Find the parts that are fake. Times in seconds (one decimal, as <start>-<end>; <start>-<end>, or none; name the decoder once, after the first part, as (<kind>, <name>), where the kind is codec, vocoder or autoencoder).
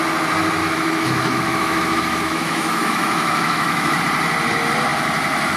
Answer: 0.6-4.0 (autoencoder, DAC-VAE)